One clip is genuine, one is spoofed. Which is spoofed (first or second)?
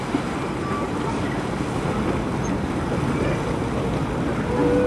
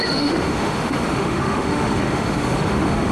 second